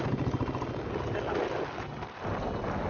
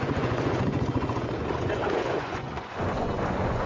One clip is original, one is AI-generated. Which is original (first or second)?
first